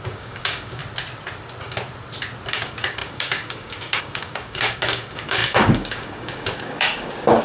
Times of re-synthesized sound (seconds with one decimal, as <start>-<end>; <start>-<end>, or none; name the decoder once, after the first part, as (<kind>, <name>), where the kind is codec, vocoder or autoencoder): 0.0-0.8 (codec, DAC); 2.5-7.4